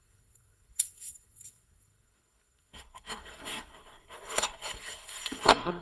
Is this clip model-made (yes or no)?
yes